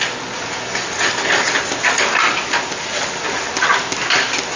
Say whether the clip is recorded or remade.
recorded